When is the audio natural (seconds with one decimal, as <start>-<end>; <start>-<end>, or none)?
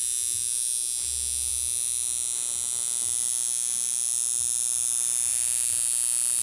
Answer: 0.0-6.4